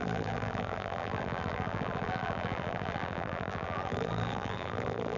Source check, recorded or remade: remade